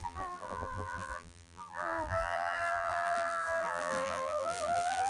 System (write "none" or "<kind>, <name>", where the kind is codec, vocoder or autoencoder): vocoder, BigVGAN v2